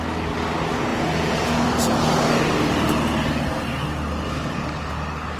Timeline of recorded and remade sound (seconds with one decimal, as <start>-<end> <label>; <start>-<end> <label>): 0.0-0.9 recorded; 0.9-2.2 remade; 2.2-5.4 recorded